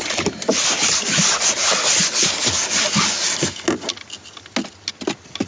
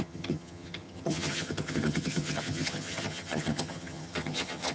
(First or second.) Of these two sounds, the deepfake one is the second